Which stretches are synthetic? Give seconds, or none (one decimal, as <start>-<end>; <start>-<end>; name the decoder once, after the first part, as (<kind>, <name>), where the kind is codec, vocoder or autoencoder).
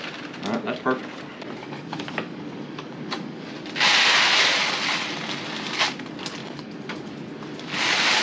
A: 1.6-3.5 (codec, DAC); 6.4-7.1